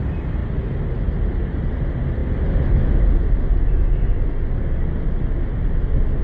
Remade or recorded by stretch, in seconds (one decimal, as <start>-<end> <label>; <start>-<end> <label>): 0.0-0.4 recorded; 0.4-1.1 remade; 1.1-6.2 recorded